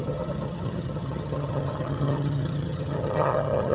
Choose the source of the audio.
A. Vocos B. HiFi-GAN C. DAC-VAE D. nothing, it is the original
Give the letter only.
B